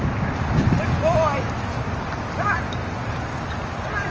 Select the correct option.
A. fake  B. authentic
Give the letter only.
B